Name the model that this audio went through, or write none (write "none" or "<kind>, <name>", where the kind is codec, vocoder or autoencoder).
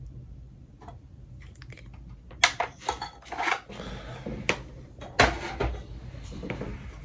none